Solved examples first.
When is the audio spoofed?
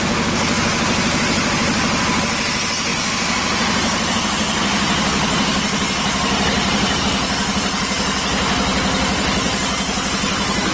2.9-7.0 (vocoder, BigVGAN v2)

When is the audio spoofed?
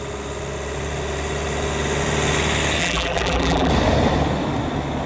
2.8-3.7 (vocoder, BigVGAN v2)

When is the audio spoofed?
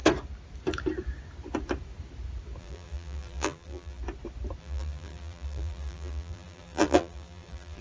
2.6-4.0 (vocoder, BigVGAN v2); 4.6-7.8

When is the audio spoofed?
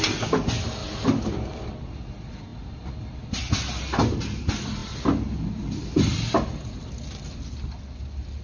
0.8-1.7 (vocoder, BigVGAN v2)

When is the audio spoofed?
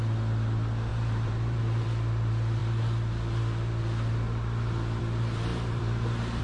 0.9-1.6 (vocoder, BigVGAN v2); 5.5-6.4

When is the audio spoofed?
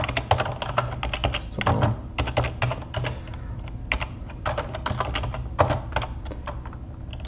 none